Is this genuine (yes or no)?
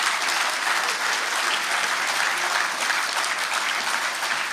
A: yes